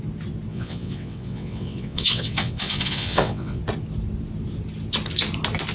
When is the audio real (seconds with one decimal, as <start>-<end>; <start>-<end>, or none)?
0.0-0.5; 3.6-5.7